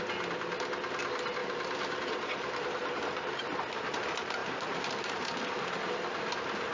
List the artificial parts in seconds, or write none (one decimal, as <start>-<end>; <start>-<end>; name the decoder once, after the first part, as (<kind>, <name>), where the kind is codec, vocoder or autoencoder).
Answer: 1.4-3.4 (vocoder, BigVGAN v2); 4.4-5.4